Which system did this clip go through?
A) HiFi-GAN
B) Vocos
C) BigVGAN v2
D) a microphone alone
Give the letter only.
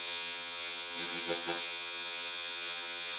A